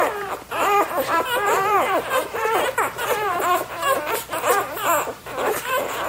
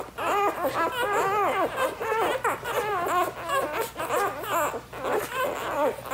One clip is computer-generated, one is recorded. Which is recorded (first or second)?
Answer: second